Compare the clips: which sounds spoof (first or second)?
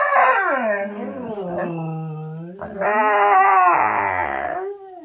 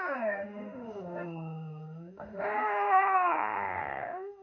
second